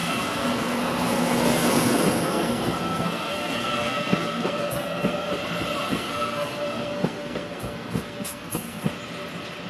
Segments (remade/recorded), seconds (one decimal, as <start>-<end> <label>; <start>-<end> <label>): 0.0-5.3 remade; 5.3-5.9 recorded; 5.9-8.9 remade; 8.9-9.7 recorded